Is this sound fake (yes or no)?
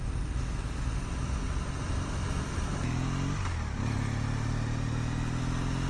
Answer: no